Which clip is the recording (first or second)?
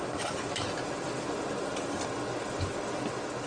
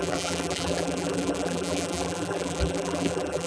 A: first